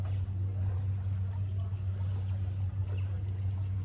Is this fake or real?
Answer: real